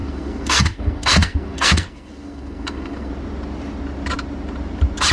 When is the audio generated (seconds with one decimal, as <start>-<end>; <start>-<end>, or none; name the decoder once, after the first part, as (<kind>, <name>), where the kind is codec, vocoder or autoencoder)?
0.0-3.1 (codec, SNAC)